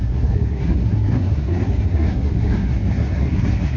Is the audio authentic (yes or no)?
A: no